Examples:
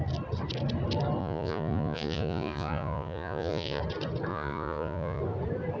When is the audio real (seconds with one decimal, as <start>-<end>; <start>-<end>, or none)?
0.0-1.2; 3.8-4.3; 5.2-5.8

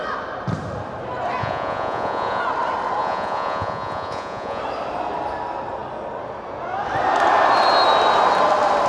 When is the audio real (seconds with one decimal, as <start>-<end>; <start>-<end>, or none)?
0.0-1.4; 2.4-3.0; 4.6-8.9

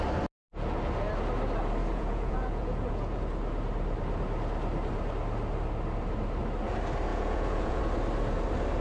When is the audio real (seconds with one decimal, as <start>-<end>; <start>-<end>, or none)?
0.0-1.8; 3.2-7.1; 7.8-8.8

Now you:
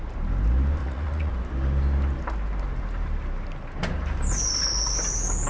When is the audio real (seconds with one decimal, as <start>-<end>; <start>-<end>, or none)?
0.0-0.8; 1.3-5.5

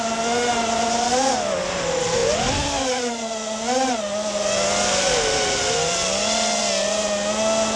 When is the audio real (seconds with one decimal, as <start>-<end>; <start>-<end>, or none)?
0.0-7.8

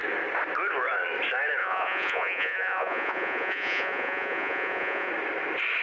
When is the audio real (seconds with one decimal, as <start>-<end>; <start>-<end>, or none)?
0.0-1.6; 5.1-5.8